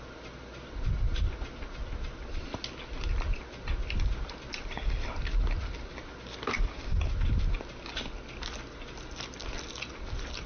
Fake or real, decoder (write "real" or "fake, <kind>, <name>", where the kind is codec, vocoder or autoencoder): real